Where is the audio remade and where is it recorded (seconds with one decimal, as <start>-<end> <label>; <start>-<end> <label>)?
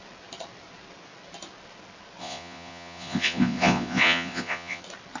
0.0-2.2 recorded; 2.2-4.8 remade; 4.8-5.2 recorded